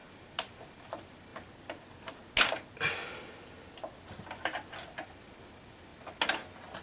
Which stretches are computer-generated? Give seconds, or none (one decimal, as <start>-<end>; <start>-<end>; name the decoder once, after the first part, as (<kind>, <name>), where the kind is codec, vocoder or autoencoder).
none